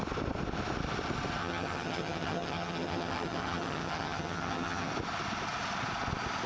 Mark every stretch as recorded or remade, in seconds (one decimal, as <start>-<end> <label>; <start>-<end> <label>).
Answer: 0.0-1.4 recorded; 1.4-4.9 remade; 4.9-6.5 recorded